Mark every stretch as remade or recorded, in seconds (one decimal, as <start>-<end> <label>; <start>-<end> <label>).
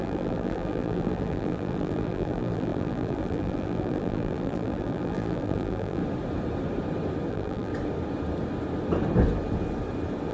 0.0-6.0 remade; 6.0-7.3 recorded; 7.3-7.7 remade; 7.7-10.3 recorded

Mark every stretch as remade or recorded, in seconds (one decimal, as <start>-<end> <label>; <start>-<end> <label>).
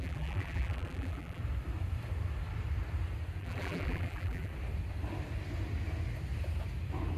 0.0-1.4 remade; 1.4-3.4 recorded; 3.4-4.5 remade; 4.5-7.2 recorded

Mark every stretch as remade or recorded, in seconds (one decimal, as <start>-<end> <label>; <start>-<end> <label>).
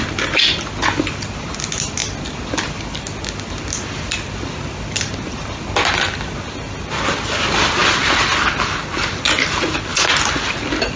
0.0-11.0 recorded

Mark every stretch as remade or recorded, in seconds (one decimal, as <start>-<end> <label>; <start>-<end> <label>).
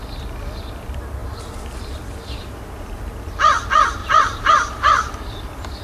0.0-4.0 recorded; 4.0-5.2 remade; 5.2-5.8 recorded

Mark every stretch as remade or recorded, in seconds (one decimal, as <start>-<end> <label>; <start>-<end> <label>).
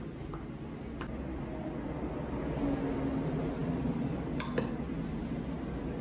0.0-3.6 recorded; 3.6-4.6 remade; 4.6-6.0 recorded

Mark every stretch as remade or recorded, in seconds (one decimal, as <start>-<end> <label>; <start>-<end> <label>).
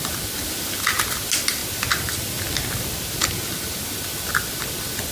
0.0-5.1 recorded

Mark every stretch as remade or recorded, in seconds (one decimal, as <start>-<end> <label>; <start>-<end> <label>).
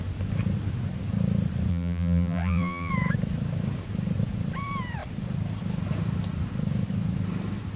0.0-1.7 recorded; 1.7-2.9 remade; 2.9-7.8 recorded